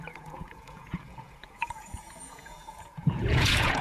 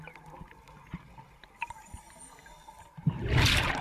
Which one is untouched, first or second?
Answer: second